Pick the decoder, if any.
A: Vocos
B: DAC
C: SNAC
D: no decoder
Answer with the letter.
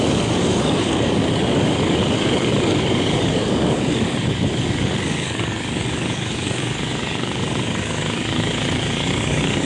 B